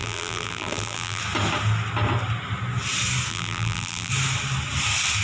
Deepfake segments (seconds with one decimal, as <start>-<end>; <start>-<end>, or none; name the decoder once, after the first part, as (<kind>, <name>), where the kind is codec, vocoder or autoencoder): 0.0-1.2 (vocoder, BigVGAN v2); 3.3-4.1